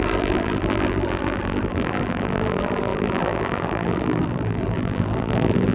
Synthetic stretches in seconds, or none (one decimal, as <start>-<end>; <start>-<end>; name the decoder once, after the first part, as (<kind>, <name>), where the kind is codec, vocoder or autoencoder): 0.0-5.7 (vocoder, BigVGAN v2)